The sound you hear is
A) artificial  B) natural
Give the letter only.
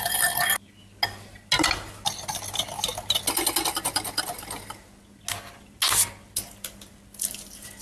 B